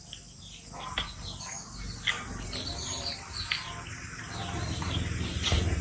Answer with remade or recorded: recorded